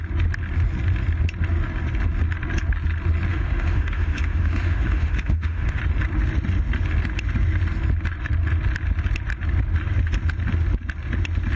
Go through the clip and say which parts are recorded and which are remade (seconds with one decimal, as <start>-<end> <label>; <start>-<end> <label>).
0.0-3.3 recorded; 3.3-5.8 remade; 5.8-11.6 recorded